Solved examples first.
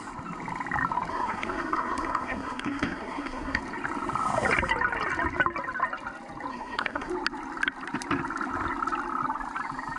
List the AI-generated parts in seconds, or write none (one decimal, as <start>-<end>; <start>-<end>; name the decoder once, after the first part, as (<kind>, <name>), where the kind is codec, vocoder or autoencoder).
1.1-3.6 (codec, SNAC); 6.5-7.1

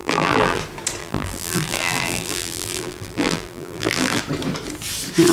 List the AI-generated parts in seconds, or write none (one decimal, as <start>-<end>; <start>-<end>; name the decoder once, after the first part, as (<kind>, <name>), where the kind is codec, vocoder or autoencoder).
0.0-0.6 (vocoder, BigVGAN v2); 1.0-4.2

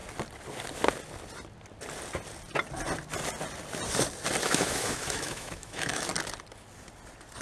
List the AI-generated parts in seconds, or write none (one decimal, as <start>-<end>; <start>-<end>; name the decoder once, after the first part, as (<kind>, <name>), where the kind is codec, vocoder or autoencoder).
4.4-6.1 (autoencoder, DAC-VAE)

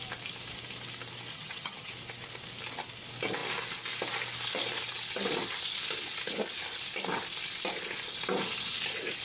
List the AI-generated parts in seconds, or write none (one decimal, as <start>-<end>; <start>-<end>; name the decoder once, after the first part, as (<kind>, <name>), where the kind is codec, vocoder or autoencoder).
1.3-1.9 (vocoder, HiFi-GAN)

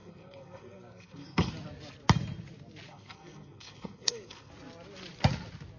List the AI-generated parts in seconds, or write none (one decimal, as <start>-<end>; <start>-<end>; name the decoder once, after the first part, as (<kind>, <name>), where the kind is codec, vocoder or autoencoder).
0.0-1.5 (codec, SNAC); 2.9-4.5

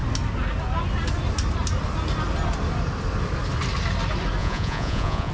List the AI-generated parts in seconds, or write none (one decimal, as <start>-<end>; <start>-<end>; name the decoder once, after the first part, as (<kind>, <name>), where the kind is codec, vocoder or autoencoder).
4.4-5.3 (vocoder, Vocos)